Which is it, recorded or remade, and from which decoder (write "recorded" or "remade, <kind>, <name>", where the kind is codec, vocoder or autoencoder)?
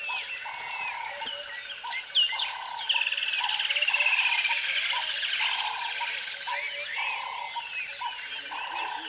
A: recorded